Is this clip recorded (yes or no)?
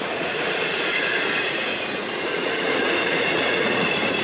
no